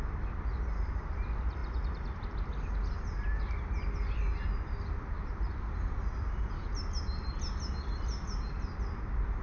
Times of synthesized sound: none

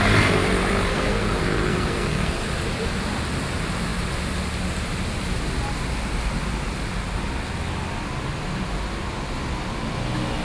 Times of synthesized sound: 0.9-2.5 (codec, SNAC)

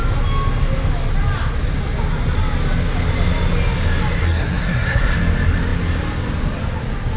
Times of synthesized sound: 4.2-5.2 (codec, SNAC)

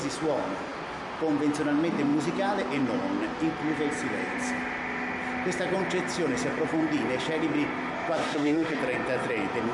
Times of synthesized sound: 8.2-8.8 (codec, SNAC)

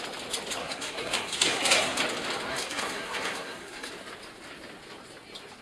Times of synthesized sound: 0.6-2.0 (codec, SNAC); 2.5-3.9